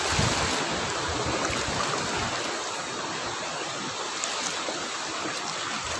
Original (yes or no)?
yes